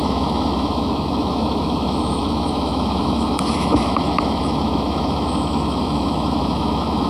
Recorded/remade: remade